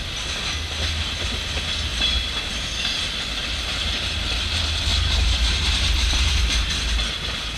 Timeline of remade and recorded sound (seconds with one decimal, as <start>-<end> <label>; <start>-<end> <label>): 0.0-1.9 recorded; 1.9-2.5 remade; 2.5-4.9 recorded; 4.9-6.7 remade; 6.7-7.6 recorded